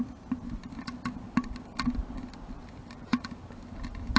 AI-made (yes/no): no